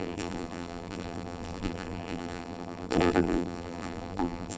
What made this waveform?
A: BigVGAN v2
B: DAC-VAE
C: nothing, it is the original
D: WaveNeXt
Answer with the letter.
A